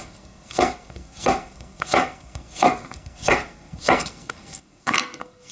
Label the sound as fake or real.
fake